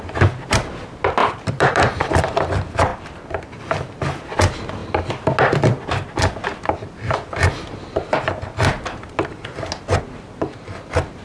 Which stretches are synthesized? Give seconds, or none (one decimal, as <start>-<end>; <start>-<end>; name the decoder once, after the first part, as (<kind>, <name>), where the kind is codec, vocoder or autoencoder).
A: 1.2-2.2 (vocoder, BigVGAN v2); 2.9-3.6